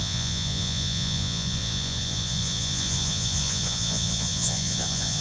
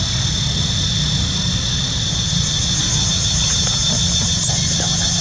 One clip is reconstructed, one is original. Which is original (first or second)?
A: second